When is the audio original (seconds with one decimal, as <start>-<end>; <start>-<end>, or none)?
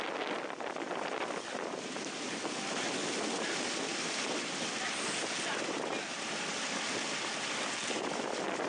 0.0-8.7